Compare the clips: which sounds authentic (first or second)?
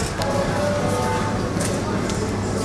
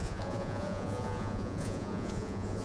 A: first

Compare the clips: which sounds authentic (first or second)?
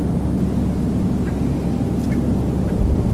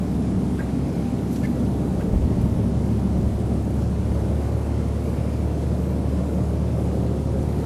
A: first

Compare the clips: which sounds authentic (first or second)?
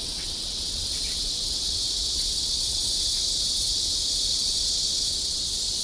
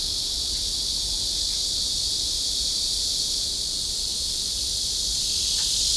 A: second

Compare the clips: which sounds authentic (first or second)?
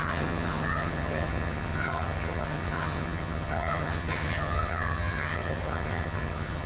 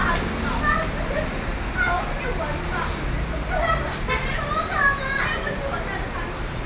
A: second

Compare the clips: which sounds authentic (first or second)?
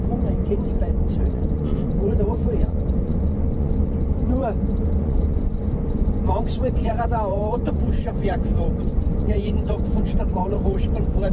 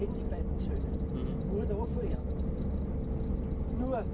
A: second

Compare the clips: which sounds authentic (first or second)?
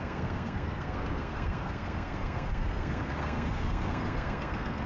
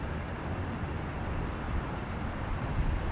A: second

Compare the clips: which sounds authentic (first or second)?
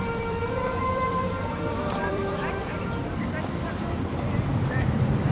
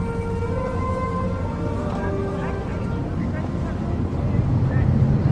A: second